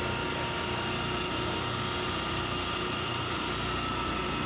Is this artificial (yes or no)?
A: no